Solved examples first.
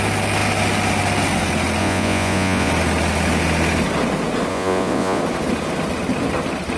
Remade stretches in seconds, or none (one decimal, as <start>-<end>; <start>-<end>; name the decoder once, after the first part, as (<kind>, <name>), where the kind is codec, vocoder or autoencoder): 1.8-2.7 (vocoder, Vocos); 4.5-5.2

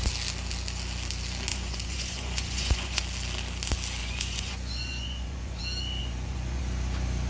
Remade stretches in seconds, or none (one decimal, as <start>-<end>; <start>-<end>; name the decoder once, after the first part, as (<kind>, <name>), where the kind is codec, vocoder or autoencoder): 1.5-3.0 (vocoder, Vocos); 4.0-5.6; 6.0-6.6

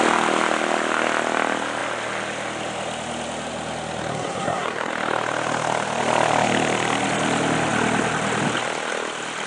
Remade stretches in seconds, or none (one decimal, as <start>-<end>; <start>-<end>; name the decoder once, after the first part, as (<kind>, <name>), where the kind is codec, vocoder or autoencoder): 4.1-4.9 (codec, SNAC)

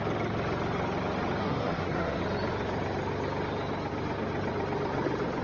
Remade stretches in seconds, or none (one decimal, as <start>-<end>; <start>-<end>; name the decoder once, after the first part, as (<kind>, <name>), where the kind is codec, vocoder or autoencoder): 1.4-2.2 (codec, SNAC)